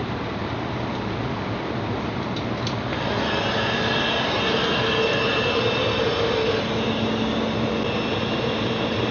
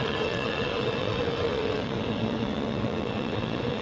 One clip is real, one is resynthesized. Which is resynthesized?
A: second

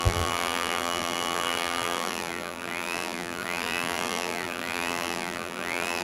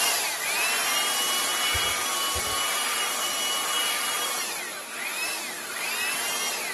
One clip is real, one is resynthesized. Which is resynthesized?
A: first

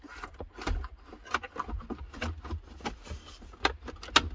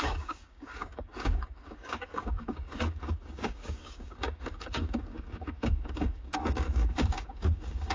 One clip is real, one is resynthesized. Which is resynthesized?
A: second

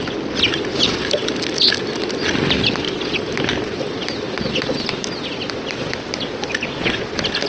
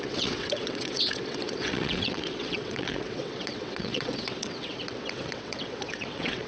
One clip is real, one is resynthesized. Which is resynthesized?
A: second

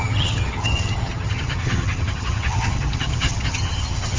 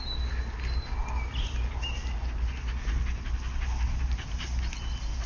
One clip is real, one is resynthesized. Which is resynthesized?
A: first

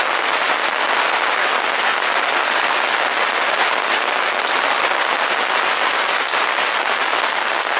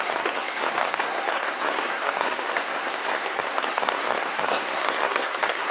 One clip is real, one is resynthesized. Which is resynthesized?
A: second